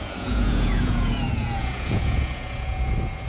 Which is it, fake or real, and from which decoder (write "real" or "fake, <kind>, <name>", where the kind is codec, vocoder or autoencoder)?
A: fake, vocoder, Vocos